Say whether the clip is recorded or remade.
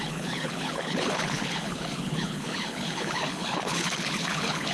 remade